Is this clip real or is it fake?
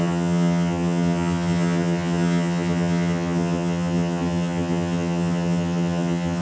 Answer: fake